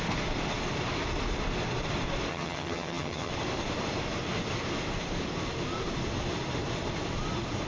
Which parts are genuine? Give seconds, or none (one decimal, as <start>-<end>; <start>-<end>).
0.0-2.3; 3.3-7.7